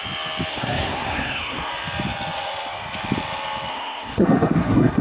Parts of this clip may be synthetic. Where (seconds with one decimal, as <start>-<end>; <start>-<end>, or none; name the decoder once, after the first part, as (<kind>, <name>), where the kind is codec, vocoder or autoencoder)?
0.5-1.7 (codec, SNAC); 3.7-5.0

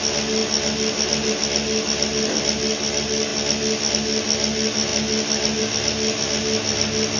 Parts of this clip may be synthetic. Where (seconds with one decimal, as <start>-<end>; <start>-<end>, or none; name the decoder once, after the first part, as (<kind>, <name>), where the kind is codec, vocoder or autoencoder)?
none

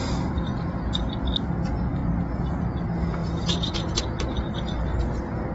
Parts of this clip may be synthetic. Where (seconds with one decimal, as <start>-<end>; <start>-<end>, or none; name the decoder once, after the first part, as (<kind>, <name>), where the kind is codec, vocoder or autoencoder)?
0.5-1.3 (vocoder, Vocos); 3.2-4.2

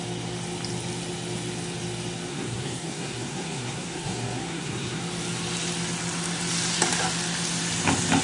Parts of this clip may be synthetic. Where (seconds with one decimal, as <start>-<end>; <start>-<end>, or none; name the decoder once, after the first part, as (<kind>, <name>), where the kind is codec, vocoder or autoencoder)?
2.3-5.0 (codec, SNAC)